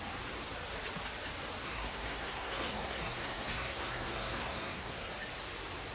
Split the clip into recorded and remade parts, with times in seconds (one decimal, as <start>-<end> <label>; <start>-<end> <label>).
0.0-1.6 recorded; 1.6-5.1 remade; 5.1-5.9 recorded